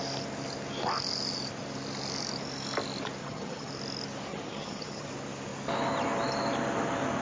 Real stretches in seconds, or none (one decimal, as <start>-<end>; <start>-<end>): 0.0-3.2; 3.7-4.3; 5.1-7.2